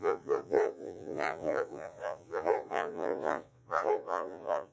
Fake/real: fake